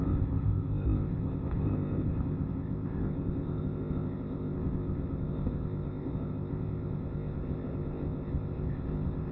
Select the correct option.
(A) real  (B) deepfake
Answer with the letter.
B